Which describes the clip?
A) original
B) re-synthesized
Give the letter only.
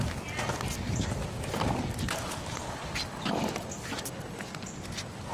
A